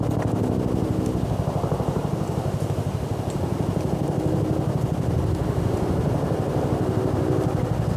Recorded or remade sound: recorded